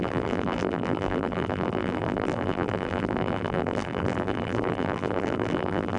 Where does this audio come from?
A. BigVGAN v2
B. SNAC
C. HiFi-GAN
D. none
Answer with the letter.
A